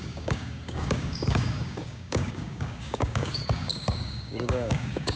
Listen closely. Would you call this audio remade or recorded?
remade